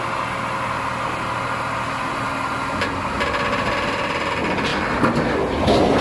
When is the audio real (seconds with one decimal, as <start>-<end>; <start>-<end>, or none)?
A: 0.0-6.0